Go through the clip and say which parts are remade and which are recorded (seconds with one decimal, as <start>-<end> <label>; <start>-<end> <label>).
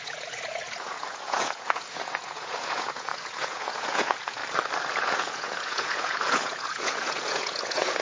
0.0-4.4 remade; 4.4-4.9 recorded; 4.9-8.0 remade